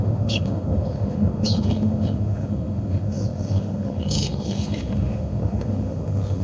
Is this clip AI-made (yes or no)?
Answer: yes